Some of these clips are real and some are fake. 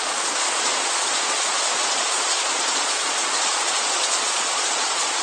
fake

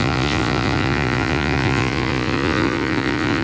fake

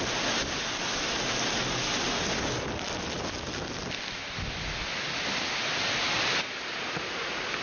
real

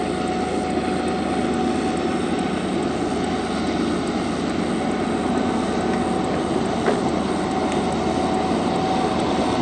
real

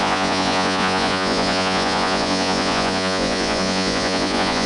fake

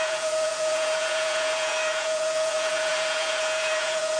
fake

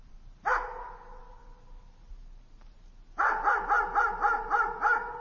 real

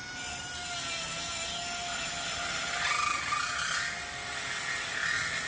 real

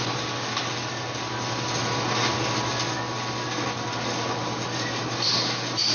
real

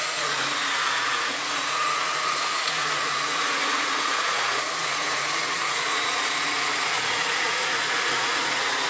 fake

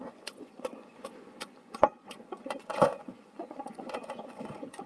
fake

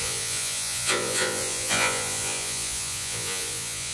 fake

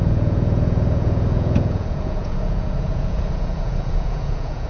fake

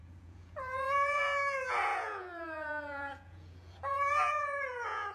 fake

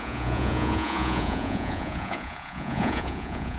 fake